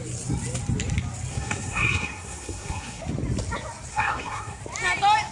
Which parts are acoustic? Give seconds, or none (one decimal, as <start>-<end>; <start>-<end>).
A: 0.0-1.3; 3.0-3.9; 4.6-5.3